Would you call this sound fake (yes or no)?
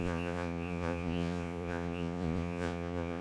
yes